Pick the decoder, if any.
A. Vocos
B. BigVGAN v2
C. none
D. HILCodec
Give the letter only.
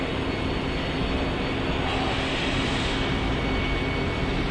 C